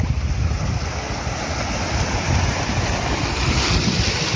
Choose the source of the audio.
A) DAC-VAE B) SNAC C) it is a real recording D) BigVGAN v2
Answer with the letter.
C